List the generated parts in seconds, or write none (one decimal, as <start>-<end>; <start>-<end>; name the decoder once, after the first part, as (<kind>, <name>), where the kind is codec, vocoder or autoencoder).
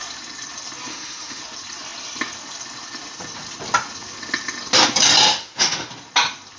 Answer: 0.9-1.4 (autoencoder, DAC-VAE); 5.3-5.9